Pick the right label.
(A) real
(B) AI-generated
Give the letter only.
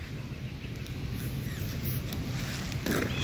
A